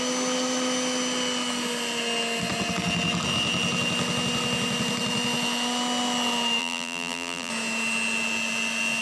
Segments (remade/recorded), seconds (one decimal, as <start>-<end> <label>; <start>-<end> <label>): 0.0-6.6 recorded; 6.6-7.5 remade; 7.5-9.0 recorded